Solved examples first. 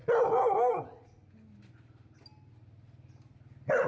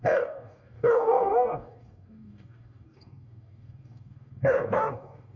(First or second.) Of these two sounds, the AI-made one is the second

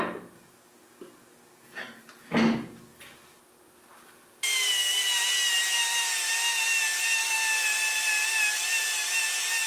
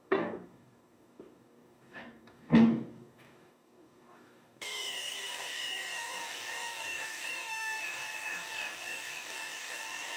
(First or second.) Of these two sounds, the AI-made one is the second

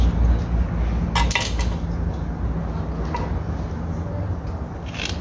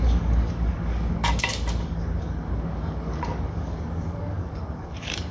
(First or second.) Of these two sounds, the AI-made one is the second